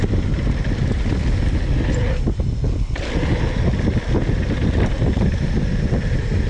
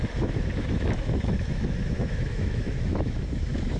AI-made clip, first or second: second